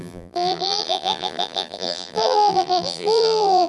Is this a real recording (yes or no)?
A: no